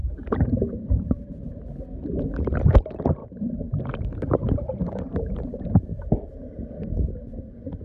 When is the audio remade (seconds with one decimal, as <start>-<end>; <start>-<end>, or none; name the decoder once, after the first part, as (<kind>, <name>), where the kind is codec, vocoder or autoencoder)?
0.0-1.7 (vocoder, BigVGAN v2); 3.2-6.5